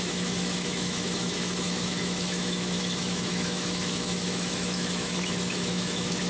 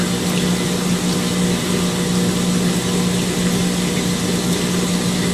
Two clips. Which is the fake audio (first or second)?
first